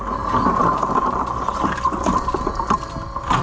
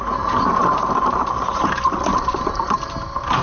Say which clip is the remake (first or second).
second